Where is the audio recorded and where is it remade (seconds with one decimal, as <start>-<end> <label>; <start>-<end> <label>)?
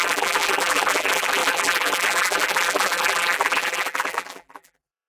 0.0-5.1 remade